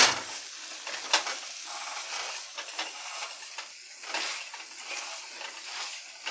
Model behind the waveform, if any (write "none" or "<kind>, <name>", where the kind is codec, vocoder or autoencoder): none